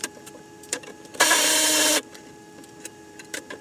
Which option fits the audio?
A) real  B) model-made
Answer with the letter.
B